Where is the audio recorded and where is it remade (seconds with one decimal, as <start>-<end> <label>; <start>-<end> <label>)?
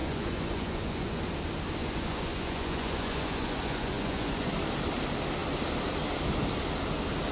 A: 0.0-1.2 remade; 1.2-1.8 recorded; 1.8-4.5 remade; 4.5-7.3 recorded